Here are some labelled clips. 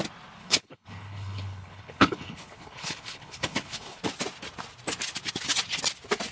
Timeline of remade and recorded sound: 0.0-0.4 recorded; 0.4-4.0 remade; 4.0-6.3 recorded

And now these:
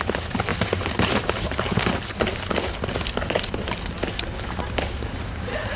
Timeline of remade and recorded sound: 0.0-5.8 recorded

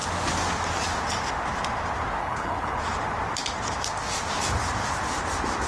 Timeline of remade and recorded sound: 0.0-2.2 recorded; 2.2-2.8 remade; 2.8-5.7 recorded

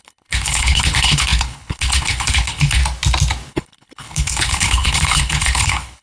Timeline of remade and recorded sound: 0.0-2.8 remade; 2.8-3.5 recorded; 3.5-6.0 remade

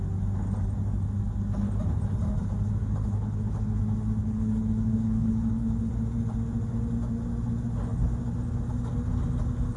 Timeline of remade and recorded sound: 0.0-2.8 recorded; 2.8-3.8 remade; 3.8-4.2 recorded; 4.2-5.9 remade; 5.9-9.8 recorded